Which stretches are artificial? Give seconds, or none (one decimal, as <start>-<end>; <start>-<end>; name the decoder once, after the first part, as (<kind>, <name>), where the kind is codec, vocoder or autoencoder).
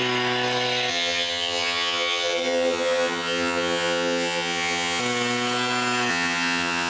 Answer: 0.9-5.0 (vocoder, HiFi-GAN); 6.1-6.9